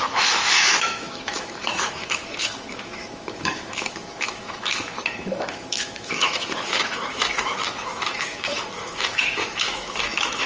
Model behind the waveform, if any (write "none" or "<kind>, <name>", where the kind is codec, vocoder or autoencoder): autoencoder, DAC-VAE